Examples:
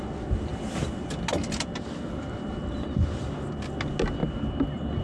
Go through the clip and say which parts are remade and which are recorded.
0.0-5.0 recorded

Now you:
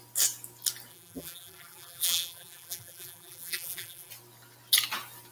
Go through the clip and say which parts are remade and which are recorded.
0.0-0.9 recorded; 0.9-4.1 remade; 4.1-5.3 recorded

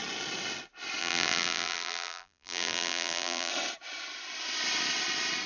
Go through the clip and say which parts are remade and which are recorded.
0.0-1.0 recorded; 1.0-3.5 remade; 3.5-5.5 recorded

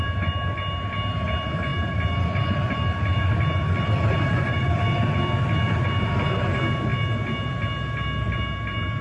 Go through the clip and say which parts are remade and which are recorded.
0.0-1.7 recorded; 1.7-4.8 remade; 4.8-9.0 recorded